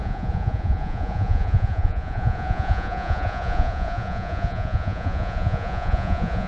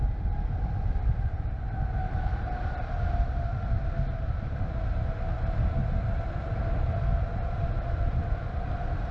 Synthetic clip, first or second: first